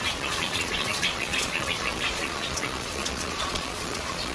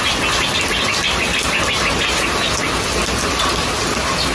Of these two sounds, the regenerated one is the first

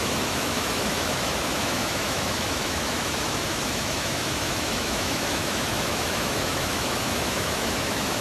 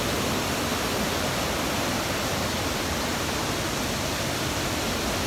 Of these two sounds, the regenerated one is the first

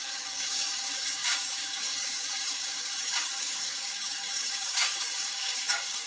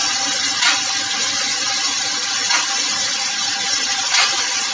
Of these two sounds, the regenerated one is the first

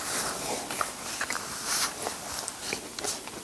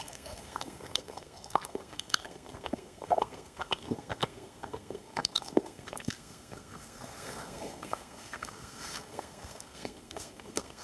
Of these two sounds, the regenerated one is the second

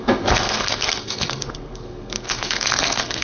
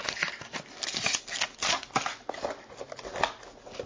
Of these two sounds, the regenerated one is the first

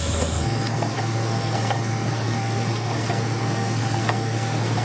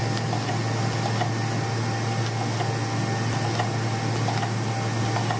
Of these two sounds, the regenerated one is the first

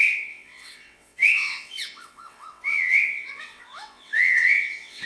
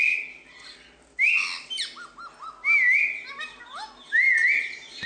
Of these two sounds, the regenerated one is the first